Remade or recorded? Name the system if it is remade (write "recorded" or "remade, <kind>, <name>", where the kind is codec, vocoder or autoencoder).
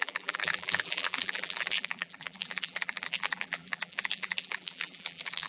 remade, vocoder, BigVGAN v2